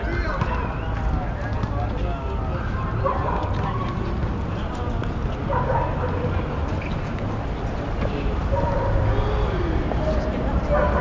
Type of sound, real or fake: real